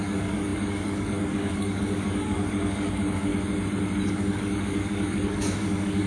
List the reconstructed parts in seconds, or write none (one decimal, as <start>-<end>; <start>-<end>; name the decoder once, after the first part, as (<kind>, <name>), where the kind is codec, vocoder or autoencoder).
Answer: 0.0-3.3 (codec, DAC); 4.1-6.1